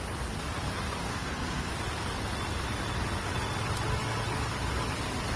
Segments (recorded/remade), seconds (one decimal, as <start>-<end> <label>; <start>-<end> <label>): 0.0-1.1 recorded; 1.1-1.7 remade; 1.7-5.4 recorded